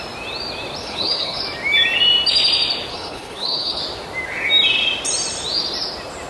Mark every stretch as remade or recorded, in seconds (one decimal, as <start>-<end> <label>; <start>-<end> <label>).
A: 0.0-0.8 recorded; 0.8-1.4 remade; 1.4-2.9 recorded; 2.9-3.8 remade; 3.8-6.3 recorded

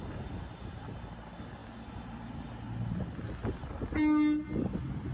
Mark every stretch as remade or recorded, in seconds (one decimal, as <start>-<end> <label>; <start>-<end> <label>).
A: 0.0-5.1 recorded

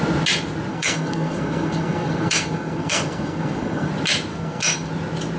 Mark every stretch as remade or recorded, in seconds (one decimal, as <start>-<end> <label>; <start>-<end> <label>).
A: 0.0-0.7 recorded; 0.7-3.9 remade; 3.9-4.3 recorded; 4.3-4.9 remade; 4.9-5.4 recorded

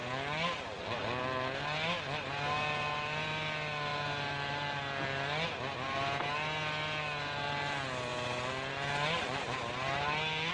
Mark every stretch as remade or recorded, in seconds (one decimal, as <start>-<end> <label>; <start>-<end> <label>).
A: 0.0-10.5 recorded

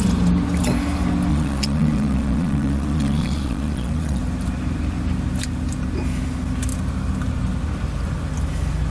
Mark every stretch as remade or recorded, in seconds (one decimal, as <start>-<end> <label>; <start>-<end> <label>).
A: 0.0-1.3 recorded; 1.3-4.2 remade; 4.2-8.9 recorded

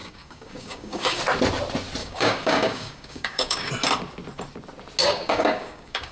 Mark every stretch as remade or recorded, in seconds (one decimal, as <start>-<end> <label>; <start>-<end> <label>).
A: 0.0-1.2 remade; 1.2-2.0 recorded; 2.0-3.7 remade; 3.7-5.0 recorded; 5.0-6.1 remade

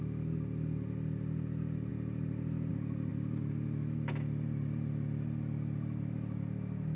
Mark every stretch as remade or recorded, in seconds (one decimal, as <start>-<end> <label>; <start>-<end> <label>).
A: 0.0-7.0 recorded

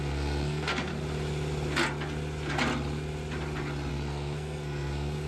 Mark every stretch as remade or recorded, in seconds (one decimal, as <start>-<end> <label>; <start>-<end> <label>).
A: 0.0-0.9 remade; 0.9-3.9 recorded; 3.9-5.3 remade